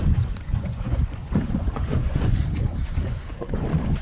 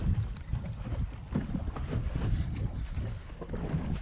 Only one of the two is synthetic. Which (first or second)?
first